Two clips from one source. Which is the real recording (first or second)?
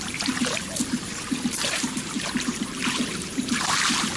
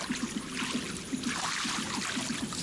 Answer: second